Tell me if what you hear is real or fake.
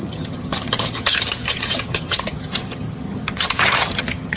fake